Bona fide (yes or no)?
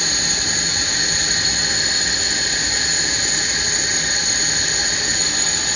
yes